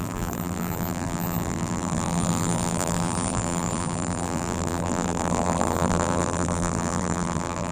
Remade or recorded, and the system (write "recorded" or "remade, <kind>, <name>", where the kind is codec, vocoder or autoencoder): remade, vocoder, BigVGAN v2